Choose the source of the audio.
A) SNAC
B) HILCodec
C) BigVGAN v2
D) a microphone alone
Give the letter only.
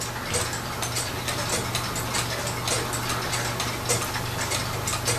D